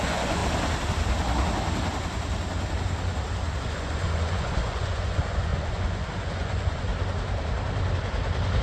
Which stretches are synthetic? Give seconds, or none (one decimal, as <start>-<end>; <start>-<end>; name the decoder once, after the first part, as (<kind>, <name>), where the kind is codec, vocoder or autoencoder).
0.0-0.4 (vocoder, Vocos); 3.6-6.9